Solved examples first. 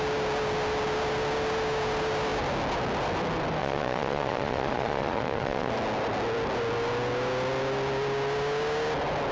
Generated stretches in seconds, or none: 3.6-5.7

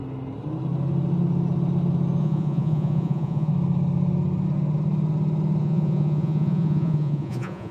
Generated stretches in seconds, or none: 2.2-3.5; 5.6-7.7